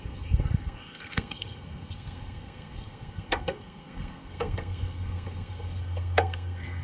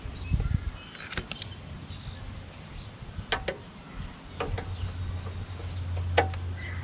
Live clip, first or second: second